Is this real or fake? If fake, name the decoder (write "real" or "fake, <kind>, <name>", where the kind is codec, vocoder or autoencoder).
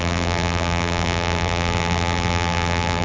fake, vocoder, BigVGAN v2